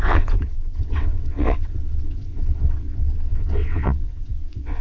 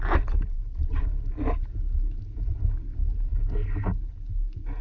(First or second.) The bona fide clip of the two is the second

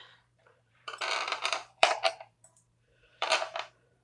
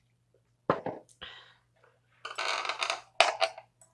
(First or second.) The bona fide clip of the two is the second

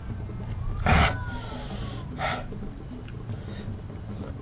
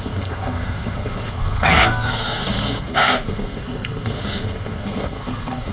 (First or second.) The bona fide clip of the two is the first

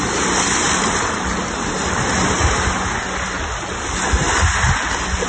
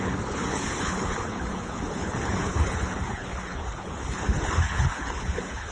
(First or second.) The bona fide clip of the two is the first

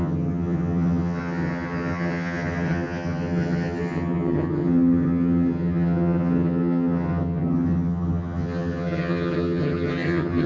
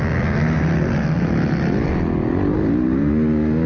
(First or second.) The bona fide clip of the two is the second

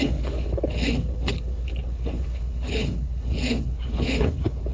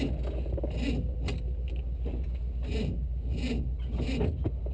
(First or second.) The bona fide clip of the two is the second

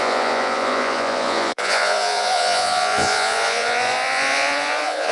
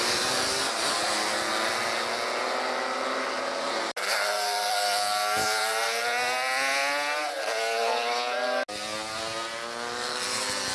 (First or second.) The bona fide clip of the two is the second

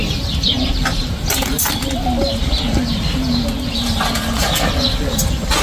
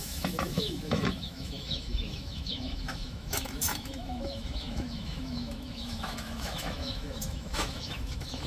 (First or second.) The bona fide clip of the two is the first